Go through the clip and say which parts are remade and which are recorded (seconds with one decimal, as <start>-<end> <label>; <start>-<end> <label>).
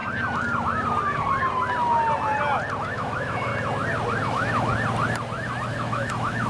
0.0-2.8 recorded; 2.8-3.5 remade; 3.5-4.2 recorded; 4.2-4.7 remade; 4.7-5.7 recorded; 5.7-6.5 remade